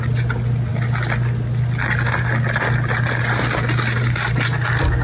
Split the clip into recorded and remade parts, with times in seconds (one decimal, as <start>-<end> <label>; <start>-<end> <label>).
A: 0.0-5.0 recorded